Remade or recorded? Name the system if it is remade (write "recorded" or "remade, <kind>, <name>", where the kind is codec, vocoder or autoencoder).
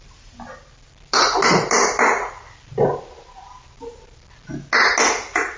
recorded